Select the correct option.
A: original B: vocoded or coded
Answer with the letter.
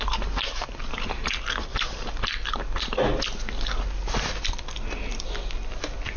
A